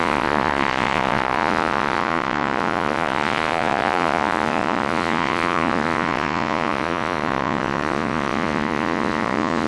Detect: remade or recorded remade